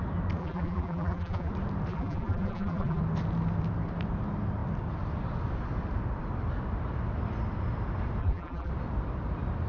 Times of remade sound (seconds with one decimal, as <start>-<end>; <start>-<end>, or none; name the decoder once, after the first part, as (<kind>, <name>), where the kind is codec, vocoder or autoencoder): 0.4-1.5 (vocoder, BigVGAN v2); 1.9-3.0; 8.2-8.7